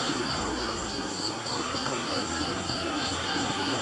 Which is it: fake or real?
fake